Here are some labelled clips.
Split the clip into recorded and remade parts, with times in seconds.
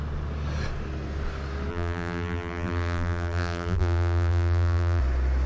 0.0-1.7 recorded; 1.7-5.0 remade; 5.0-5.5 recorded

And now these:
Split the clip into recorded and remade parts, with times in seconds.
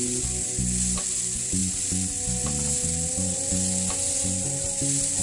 0.0-5.2 recorded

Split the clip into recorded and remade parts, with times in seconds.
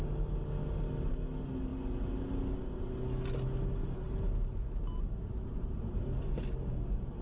0.0-7.2 recorded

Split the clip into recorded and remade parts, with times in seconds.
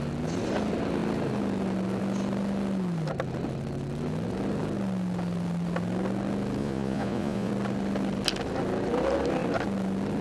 0.0-6.6 recorded; 6.6-7.5 remade; 7.5-10.2 recorded